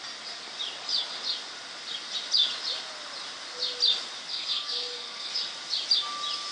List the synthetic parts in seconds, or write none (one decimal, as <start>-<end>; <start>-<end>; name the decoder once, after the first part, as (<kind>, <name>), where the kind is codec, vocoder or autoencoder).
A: 4.3-5.3 (codec, SNAC)